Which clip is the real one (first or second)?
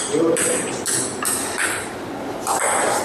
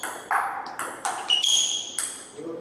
first